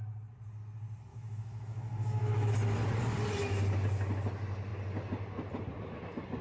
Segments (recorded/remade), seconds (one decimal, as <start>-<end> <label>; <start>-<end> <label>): 0.0-1.1 recorded; 1.1-2.5 remade; 2.5-6.4 recorded